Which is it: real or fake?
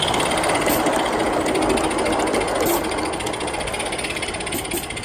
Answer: real